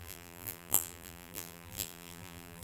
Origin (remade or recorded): remade